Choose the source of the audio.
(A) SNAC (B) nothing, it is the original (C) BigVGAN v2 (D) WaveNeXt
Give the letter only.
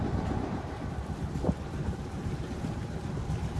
C